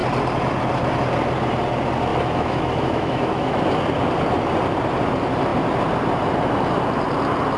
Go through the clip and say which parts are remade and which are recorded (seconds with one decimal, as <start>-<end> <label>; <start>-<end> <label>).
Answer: 0.0-2.1 recorded; 2.1-3.6 remade; 3.6-7.6 recorded